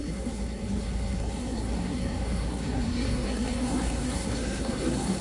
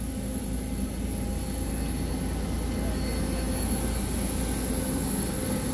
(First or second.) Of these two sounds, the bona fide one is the second